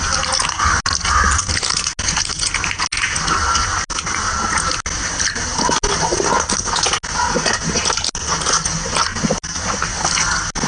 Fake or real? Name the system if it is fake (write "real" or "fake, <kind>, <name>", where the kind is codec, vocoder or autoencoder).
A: real